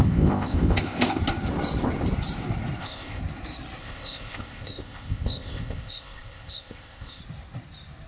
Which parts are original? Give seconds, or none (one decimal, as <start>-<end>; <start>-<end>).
1.2-2.8; 3.2-3.8; 7.2-8.1

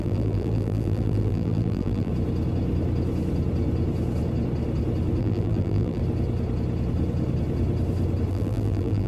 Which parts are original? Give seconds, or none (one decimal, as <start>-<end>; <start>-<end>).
2.1-5.2; 6.0-8.3

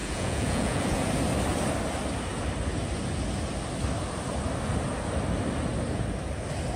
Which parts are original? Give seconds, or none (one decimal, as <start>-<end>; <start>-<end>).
1.1-6.8